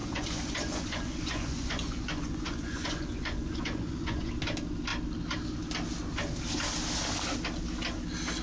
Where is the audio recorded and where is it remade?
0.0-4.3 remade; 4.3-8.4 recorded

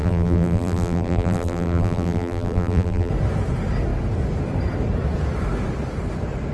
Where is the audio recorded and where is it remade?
0.0-3.1 remade; 3.1-6.5 recorded

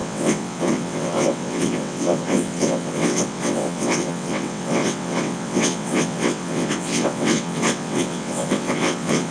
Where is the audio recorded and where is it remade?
0.0-9.3 remade